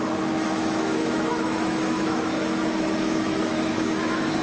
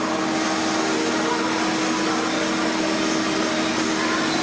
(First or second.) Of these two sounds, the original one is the second